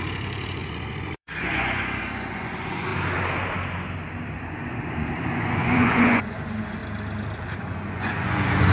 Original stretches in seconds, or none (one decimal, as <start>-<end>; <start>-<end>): 2.9-4.4; 6.8-7.6